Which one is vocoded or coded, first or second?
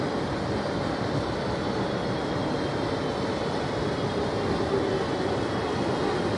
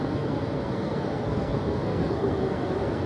second